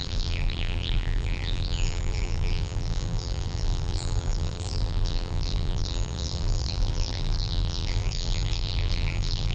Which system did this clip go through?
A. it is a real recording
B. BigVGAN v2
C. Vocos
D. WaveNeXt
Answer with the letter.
B